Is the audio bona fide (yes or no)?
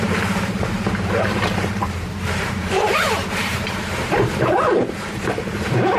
no